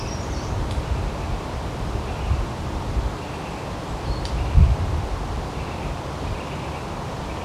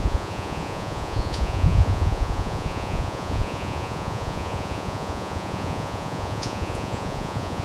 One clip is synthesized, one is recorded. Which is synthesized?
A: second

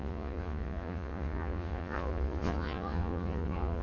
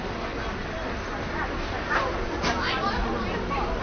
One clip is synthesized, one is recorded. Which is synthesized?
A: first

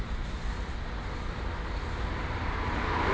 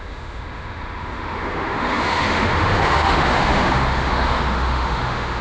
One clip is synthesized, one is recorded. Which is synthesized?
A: second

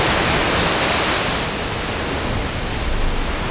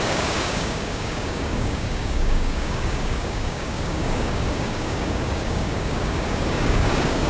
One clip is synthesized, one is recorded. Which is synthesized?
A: second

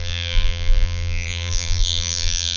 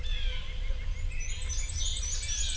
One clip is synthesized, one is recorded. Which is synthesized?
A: first